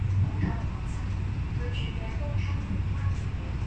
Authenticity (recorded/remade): recorded